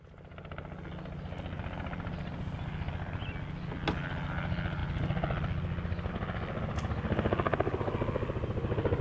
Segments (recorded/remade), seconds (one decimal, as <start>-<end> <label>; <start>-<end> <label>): 0.0-9.0 recorded